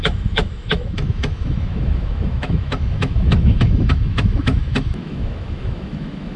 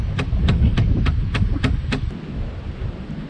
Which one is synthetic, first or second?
first